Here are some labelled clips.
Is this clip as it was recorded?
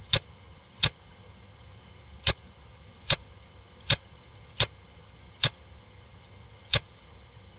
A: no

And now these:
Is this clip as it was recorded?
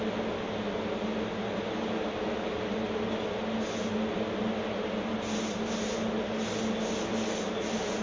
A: yes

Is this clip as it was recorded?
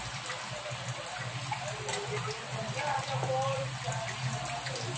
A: yes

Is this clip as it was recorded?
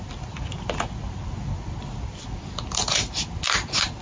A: yes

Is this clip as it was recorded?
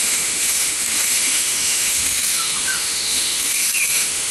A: no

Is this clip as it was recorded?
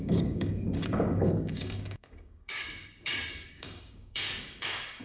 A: no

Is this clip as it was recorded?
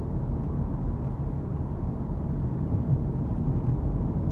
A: yes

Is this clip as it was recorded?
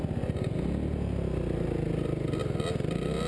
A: yes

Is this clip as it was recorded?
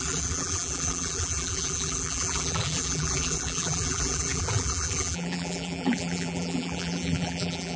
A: no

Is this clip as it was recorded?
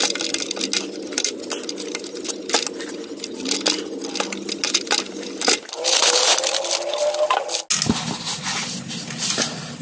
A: yes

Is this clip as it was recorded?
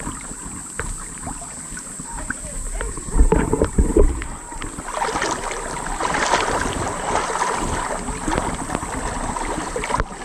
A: yes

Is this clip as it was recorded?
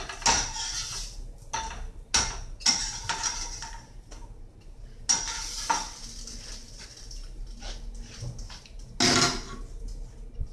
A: yes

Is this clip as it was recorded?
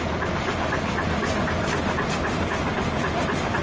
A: yes